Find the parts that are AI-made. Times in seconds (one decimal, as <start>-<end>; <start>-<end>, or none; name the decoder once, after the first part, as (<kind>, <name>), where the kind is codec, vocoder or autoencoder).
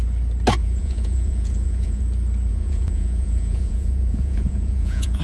0.6-2.0 (vocoder, Vocos); 2.5-5.2